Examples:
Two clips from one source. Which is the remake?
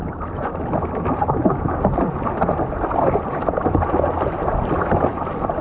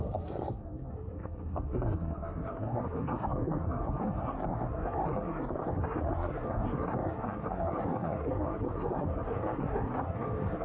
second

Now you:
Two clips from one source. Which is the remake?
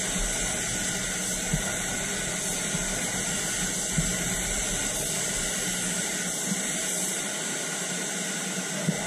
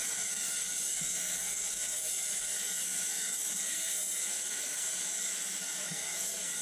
second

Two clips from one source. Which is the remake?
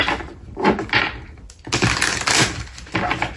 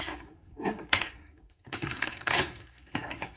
second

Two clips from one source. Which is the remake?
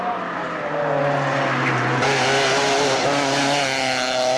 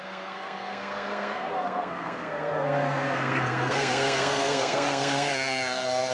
second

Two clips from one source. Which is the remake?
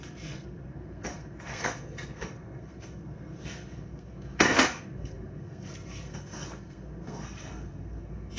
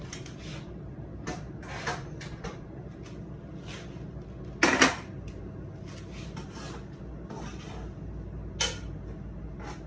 first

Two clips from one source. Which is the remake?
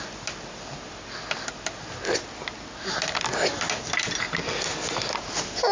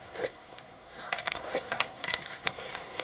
second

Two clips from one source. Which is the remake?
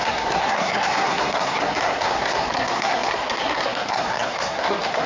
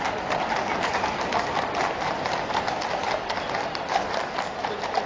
first